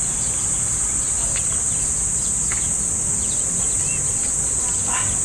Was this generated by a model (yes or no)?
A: no